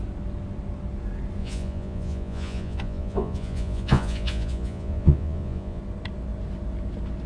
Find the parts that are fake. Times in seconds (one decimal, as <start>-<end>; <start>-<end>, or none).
1.4-5.8